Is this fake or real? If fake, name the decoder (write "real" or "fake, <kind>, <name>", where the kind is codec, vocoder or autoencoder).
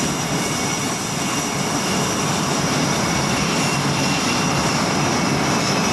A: real